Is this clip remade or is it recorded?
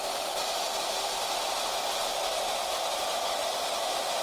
remade